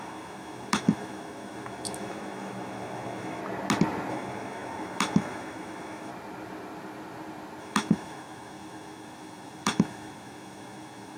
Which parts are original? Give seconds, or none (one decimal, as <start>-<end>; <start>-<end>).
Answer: 3.4-4.1; 6.1-7.6